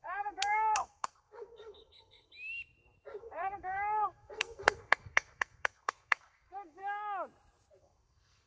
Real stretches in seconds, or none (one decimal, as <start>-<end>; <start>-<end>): 2.3-3.2; 6.8-7.8